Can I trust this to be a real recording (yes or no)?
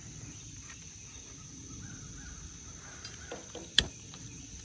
yes